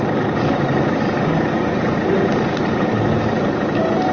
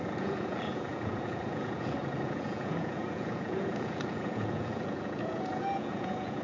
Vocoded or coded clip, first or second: second